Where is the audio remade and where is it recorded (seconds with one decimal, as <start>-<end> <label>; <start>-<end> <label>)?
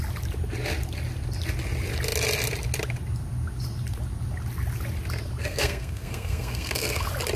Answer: 0.0-5.4 recorded; 5.4-7.0 remade; 7.0-7.4 recorded